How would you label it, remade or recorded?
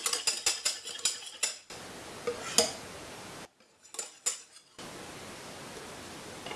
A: recorded